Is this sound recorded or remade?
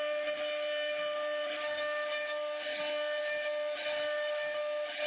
recorded